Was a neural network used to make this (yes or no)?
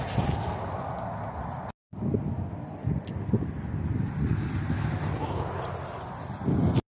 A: no